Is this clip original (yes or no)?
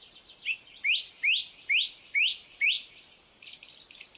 yes